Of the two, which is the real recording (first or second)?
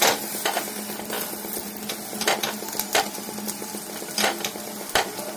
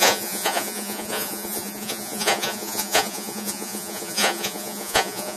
first